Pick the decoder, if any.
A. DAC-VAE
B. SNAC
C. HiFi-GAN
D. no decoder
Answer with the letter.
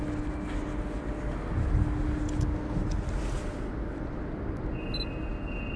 D